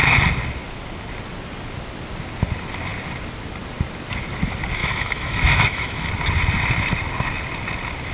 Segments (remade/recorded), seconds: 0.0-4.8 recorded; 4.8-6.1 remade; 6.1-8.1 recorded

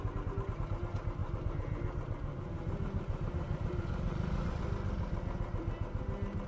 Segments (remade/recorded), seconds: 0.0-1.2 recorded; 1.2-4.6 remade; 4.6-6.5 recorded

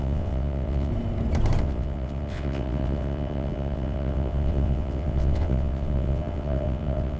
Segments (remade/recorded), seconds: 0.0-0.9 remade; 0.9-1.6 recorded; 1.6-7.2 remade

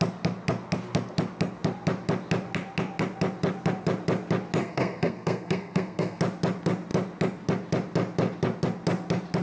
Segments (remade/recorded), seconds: 0.0-4.6 recorded; 4.6-6.2 remade; 6.2-9.4 recorded